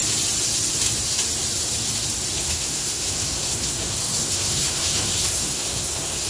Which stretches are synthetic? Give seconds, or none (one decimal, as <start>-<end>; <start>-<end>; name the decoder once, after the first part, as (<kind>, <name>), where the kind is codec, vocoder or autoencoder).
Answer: 2.4-6.3 (codec, SNAC)